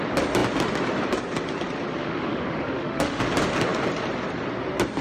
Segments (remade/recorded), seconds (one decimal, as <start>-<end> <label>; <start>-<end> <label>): 0.0-2.0 recorded; 2.0-3.2 remade; 3.2-5.0 recorded